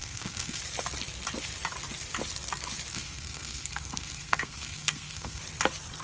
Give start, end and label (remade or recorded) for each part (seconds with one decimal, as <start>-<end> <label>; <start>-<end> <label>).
0.0-0.6 remade; 0.6-2.9 recorded; 2.9-5.4 remade; 5.4-6.0 recorded

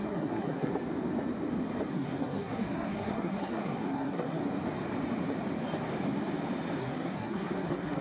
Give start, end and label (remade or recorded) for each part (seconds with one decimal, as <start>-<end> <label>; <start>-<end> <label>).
0.0-0.7 remade; 0.7-1.9 recorded; 1.9-4.4 remade; 4.4-6.8 recorded; 6.8-8.0 remade

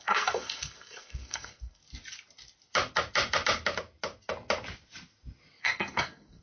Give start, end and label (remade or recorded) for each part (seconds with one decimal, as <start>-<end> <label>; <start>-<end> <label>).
0.0-1.8 remade; 1.8-5.6 recorded; 5.6-6.4 remade

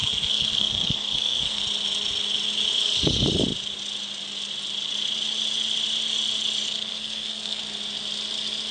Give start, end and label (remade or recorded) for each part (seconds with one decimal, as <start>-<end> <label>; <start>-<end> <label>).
0.0-1.6 remade; 1.6-6.9 recorded; 6.9-7.6 remade; 7.6-8.7 recorded